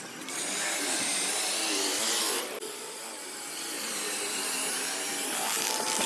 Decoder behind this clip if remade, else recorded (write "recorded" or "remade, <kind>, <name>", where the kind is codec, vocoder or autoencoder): remade, vocoder, BigVGAN v2